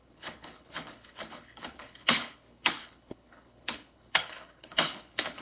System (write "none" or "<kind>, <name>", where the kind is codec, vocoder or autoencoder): codec, HILCodec